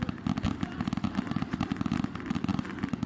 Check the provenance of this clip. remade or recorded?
recorded